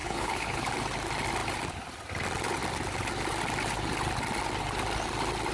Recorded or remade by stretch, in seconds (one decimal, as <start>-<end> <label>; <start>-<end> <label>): 0.0-0.7 remade; 0.7-5.5 recorded